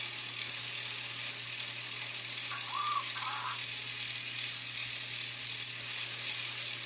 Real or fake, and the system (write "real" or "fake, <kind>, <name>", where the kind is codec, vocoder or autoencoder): real